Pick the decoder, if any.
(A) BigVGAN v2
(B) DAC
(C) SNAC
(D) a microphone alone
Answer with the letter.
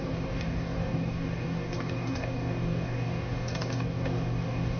B